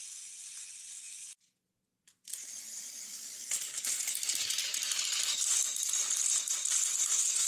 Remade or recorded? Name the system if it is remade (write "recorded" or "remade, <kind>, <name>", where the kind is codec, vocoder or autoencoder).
recorded